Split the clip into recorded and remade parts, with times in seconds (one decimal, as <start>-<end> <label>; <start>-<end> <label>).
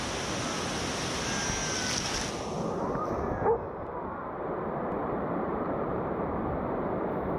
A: 0.0-5.0 recorded; 5.0-6.2 remade; 6.2-7.4 recorded